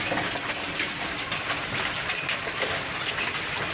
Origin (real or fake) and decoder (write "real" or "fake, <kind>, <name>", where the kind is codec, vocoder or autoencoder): real